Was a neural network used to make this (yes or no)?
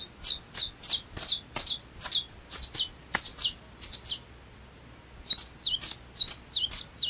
no